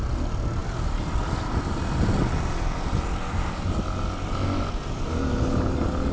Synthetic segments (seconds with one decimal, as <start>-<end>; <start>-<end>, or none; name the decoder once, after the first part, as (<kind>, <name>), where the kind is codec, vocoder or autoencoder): none